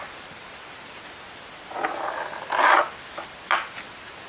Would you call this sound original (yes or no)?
yes